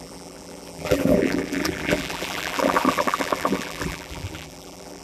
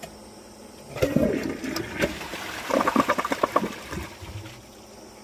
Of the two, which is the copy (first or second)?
first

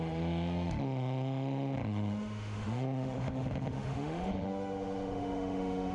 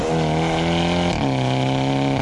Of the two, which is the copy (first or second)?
first